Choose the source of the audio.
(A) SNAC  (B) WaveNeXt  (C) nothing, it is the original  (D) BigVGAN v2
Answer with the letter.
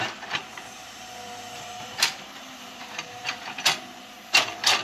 D